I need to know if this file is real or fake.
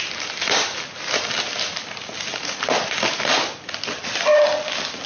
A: real